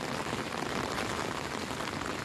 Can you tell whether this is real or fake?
real